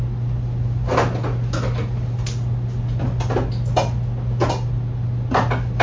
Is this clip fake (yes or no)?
no